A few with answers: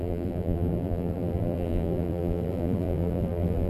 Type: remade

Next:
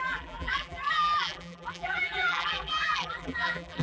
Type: remade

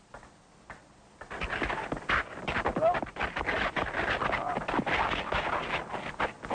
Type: recorded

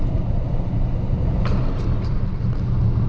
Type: remade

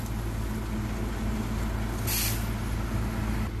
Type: recorded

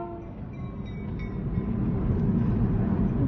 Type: recorded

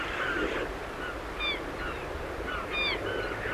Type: recorded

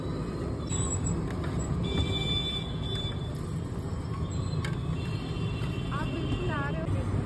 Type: recorded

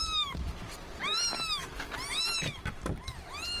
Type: recorded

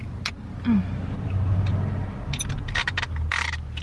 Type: recorded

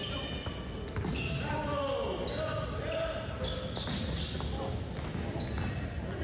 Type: recorded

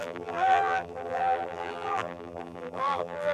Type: remade